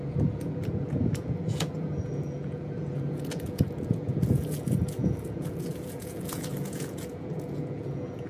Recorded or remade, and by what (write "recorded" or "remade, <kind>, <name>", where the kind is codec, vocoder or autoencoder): remade, vocoder, Vocos